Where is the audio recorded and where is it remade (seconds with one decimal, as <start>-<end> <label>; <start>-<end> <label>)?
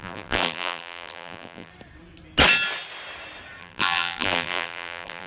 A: 0.0-1.7 remade; 1.7-3.6 recorded; 3.6-5.3 remade